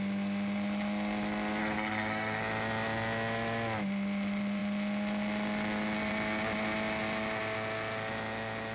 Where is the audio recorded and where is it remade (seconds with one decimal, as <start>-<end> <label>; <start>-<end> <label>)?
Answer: 0.0-1.6 recorded; 1.6-2.4 remade; 2.4-8.7 recorded

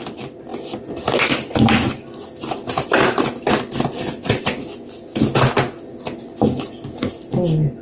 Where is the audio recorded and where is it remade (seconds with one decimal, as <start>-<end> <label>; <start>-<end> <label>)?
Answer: 0.0-7.8 recorded